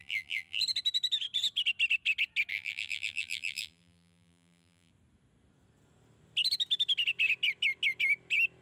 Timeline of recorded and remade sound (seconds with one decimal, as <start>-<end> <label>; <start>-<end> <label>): 0.0-0.6 remade; 0.6-2.5 recorded; 2.5-4.9 remade; 4.9-8.6 recorded